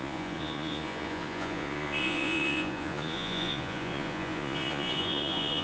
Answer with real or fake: fake